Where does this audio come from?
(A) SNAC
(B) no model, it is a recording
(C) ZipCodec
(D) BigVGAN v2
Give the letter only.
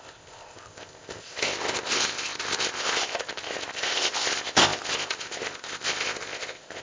C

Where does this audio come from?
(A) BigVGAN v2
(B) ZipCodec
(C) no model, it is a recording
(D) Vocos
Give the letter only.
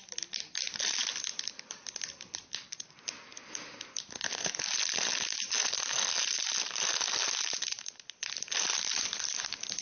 C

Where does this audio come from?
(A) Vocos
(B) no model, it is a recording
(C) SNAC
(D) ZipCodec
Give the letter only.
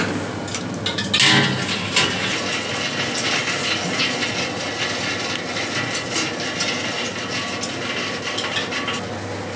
B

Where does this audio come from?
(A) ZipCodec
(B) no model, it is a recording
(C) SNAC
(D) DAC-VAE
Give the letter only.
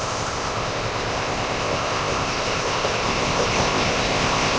A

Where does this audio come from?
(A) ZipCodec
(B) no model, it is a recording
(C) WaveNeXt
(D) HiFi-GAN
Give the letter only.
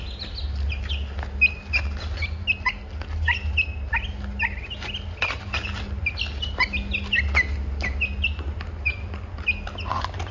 B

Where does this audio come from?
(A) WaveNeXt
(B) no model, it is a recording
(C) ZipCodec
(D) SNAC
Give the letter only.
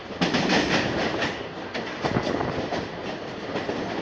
B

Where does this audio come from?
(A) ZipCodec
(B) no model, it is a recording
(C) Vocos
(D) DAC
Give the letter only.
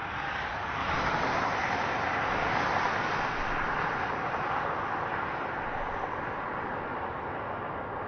B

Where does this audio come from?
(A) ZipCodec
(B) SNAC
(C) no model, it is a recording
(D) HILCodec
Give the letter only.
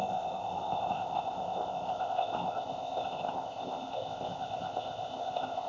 A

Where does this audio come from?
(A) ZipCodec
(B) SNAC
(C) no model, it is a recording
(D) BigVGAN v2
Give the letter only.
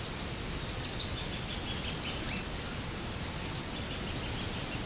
C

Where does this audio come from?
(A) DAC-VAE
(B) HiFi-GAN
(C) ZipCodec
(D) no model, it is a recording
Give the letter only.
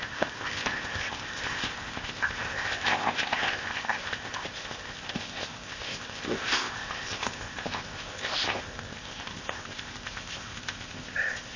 C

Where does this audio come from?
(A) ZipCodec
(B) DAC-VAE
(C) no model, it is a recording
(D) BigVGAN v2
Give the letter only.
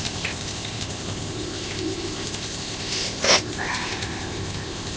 A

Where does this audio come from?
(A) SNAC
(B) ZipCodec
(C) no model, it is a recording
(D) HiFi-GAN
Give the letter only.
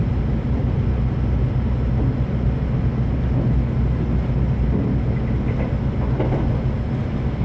C